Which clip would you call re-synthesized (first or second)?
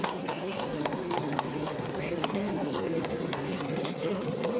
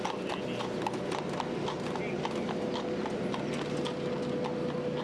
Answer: first